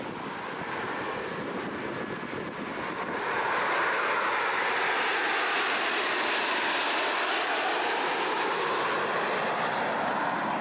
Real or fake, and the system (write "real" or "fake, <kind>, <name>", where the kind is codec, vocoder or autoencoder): real